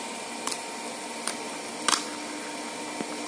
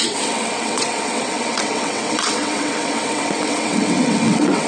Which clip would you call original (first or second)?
first